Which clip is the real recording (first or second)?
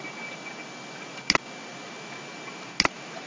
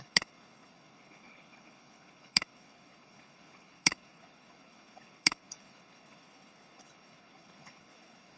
first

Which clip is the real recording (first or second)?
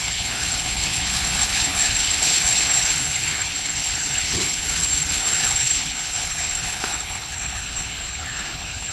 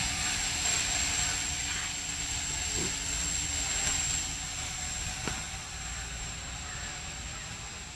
second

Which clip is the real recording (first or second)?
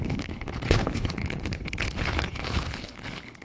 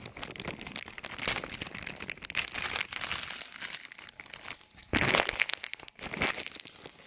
second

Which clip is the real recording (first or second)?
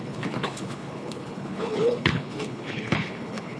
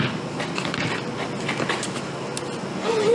second